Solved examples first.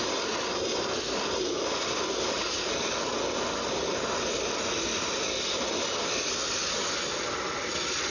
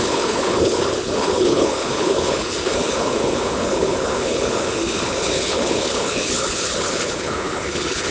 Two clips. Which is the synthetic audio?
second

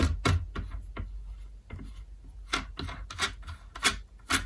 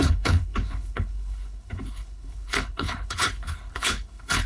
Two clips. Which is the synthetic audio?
second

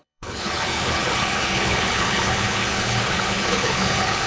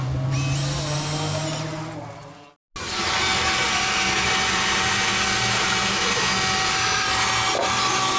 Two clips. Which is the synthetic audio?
first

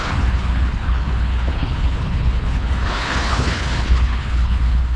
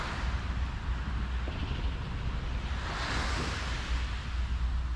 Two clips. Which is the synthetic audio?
first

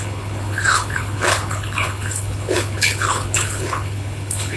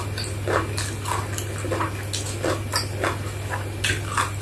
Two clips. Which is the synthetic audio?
first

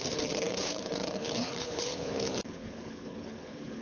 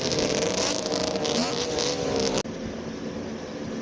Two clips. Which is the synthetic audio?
first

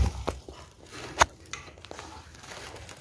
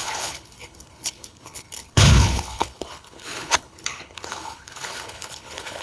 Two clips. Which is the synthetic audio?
second